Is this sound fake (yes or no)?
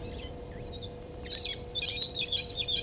yes